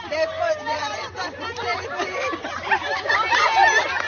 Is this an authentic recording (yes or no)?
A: yes